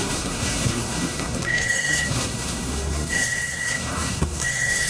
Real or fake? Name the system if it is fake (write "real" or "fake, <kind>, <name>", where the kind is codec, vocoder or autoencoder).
fake, codec, SNAC